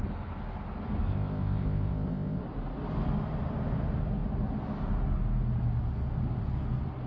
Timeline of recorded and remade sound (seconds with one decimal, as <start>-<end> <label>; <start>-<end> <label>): 0.0-1.1 recorded; 1.1-2.4 remade; 2.4-7.1 recorded